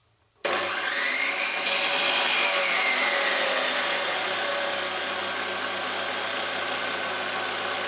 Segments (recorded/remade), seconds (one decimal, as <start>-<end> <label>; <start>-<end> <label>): 0.0-7.9 recorded